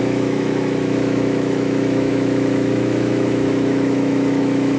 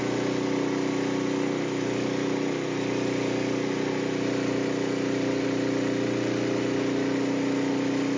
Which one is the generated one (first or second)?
first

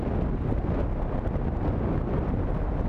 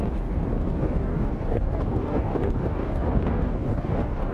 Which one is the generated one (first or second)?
second